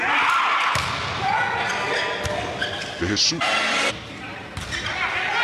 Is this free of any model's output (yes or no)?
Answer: yes